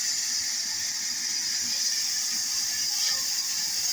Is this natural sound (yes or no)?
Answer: yes